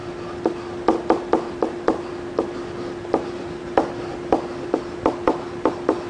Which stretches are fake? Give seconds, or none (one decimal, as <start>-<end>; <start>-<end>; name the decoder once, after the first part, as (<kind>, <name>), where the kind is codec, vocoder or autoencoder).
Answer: none